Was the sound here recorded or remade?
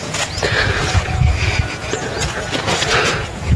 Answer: remade